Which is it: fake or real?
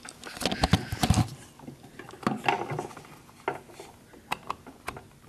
real